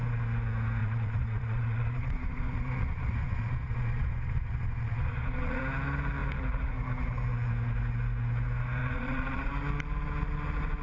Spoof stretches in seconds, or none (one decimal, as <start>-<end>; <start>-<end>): 0.8-5.6; 8.8-9.5